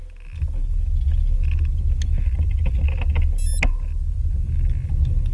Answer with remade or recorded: recorded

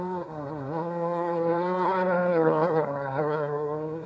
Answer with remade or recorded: remade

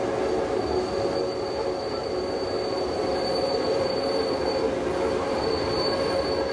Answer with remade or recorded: recorded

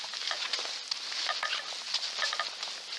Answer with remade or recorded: recorded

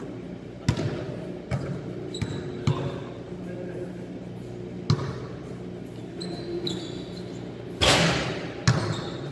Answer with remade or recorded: recorded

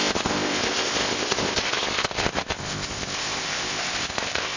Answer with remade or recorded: remade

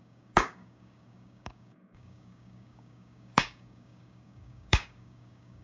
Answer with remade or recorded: remade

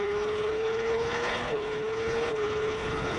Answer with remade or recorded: remade